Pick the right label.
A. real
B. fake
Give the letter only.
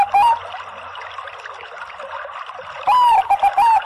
A